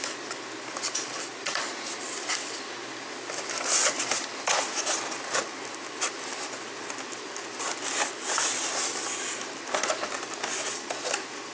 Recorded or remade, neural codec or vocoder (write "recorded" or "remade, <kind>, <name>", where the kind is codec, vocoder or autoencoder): recorded